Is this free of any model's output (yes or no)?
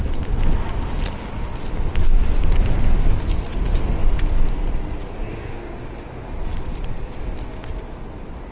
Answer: yes